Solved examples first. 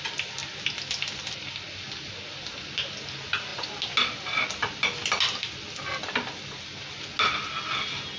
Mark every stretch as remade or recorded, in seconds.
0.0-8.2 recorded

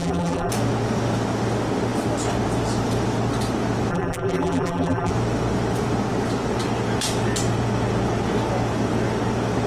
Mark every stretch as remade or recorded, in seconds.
0.0-0.5 remade; 0.5-3.9 recorded; 3.9-5.1 remade; 5.1-9.7 recorded

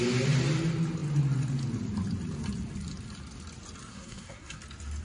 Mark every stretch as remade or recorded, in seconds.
0.0-3.9 recorded; 3.9-4.6 remade; 4.6-5.0 recorded

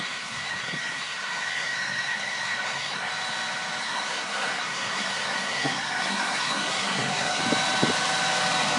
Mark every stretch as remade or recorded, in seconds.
0.0-3.1 remade; 3.1-3.8 recorded; 3.8-7.4 remade; 7.4-8.8 recorded